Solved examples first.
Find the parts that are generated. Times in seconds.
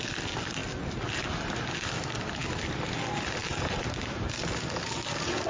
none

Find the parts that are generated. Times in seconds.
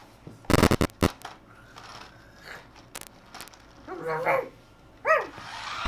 none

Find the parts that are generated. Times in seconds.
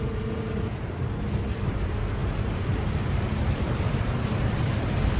0.0-5.2 (vocoder, BigVGAN v2)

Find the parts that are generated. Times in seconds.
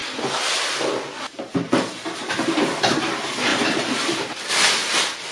0.0-5.3 (vocoder, BigVGAN v2)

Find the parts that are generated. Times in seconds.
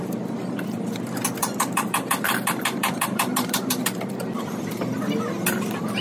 1.4-5.0 (vocoder, BigVGAN v2)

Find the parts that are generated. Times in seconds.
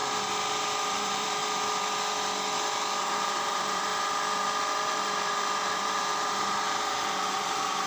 0.9-1.4 (vocoder, BigVGAN v2); 3.0-3.9; 4.9-7.9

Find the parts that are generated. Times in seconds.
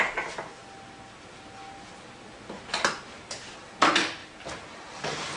4.2-5.4 (vocoder, BigVGAN v2)